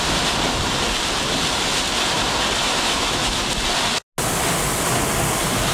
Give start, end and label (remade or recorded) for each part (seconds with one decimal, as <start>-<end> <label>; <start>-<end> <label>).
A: 0.0-2.6 recorded; 2.6-3.4 remade; 3.4-5.7 recorded